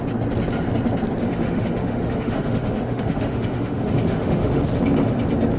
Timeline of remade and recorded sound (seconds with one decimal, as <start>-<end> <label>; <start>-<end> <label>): 0.0-1.2 recorded; 1.2-4.6 remade; 4.6-5.6 recorded